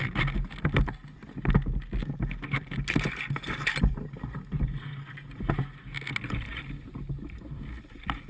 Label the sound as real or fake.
real